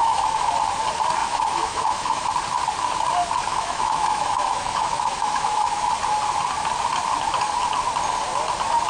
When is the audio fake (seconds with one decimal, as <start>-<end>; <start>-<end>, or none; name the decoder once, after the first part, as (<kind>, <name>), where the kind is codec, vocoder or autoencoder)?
0.0-0.5 (autoencoder, DAC-VAE); 1.2-2.3; 3.5-5.9